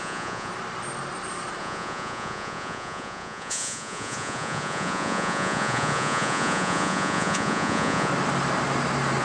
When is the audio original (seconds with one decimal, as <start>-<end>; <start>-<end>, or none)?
0.5-1.6; 8.1-9.2